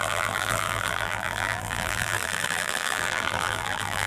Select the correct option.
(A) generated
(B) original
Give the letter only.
A